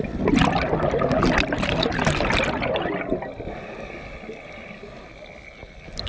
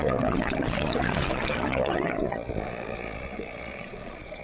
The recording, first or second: first